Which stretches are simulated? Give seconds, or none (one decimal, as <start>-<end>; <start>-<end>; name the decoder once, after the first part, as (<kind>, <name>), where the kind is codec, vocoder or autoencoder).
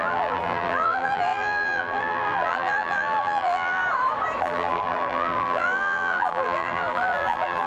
0.0-3.8 (vocoder, BigVGAN v2); 4.4-7.7